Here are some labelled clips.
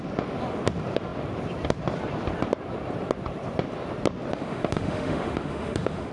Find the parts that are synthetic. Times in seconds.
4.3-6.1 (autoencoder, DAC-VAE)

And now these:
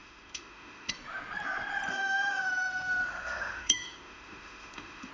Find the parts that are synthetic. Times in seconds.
0.0-0.9 (autoencoder, DAC-VAE); 1.9-5.1

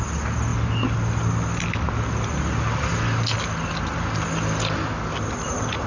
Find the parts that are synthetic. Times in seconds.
none

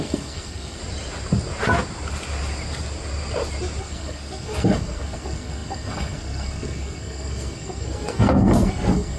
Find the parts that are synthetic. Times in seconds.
0.0-0.8 (codec, SNAC); 3.8-9.2

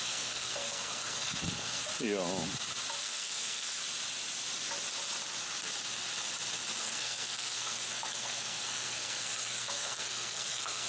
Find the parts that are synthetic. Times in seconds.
0.0-1.8 (codec, SNAC); 3.0-3.8; 6.8-10.9

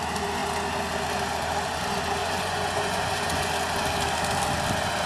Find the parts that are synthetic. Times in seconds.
2.2-3.5 (vocoder, Vocos)

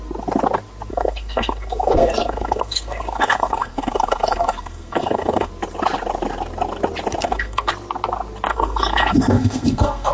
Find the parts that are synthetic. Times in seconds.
0.9-5.5 (codec, SNAC); 7.2-7.7; 8.5-10.1

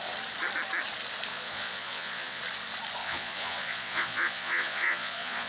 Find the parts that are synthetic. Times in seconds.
1.3-2.4 (vocoder, Vocos); 3.0-5.5